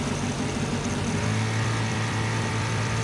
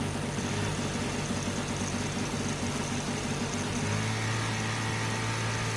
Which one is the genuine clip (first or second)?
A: second